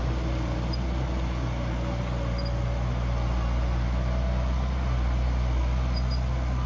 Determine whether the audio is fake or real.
real